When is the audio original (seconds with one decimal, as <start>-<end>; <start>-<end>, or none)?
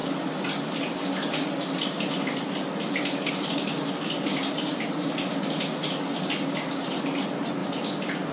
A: 0.0-8.3